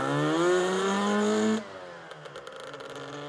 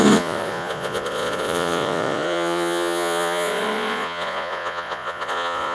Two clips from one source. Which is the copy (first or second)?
second